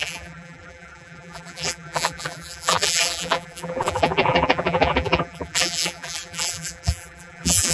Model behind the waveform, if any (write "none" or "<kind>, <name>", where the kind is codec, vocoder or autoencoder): vocoder, BigVGAN v2